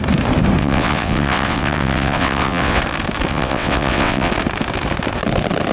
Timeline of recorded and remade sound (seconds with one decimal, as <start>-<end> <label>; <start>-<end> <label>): 0.0-0.6 recorded; 0.6-2.8 remade; 2.8-3.3 recorded; 3.3-4.3 remade; 4.3-5.7 recorded